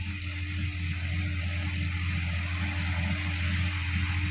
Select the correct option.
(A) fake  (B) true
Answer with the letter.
B